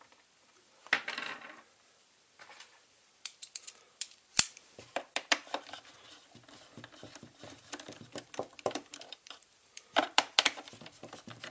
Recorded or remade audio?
remade